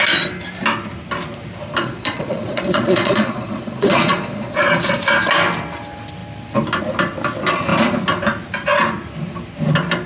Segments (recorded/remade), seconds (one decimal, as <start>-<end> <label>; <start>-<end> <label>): 0.0-1.8 recorded; 1.8-5.0 remade; 5.0-10.1 recorded